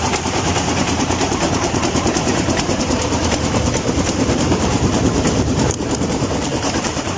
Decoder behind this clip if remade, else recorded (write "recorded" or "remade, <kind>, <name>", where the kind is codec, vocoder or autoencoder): remade, vocoder, BigVGAN v2